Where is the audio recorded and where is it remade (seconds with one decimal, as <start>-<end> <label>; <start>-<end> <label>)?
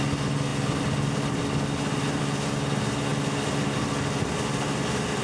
0.0-5.2 recorded